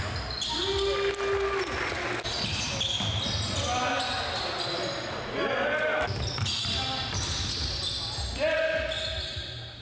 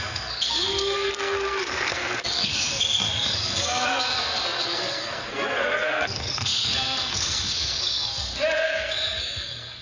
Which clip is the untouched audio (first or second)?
first